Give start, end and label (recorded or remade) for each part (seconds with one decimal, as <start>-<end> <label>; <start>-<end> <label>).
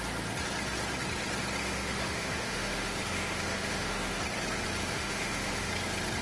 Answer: 0.0-1.6 recorded; 1.6-4.2 remade; 4.2-4.8 recorded; 4.8-5.7 remade; 5.7-6.2 recorded